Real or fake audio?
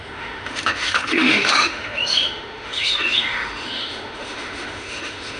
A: fake